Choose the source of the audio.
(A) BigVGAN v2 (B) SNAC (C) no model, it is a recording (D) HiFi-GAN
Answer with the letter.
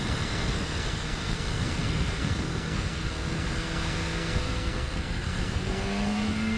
B